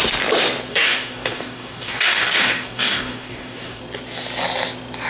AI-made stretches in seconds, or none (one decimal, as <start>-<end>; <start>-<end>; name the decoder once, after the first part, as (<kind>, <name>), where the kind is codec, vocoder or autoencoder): 0.7-3.8 (codec, DAC)